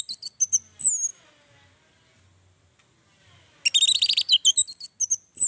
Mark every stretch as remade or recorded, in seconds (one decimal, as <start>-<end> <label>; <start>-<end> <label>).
0.0-5.5 recorded